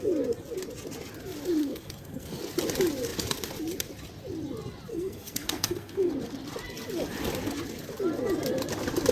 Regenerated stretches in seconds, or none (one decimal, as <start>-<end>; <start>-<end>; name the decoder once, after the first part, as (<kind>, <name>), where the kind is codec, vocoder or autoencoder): 1.6-2.4 (codec, SNAC); 4.9-6.1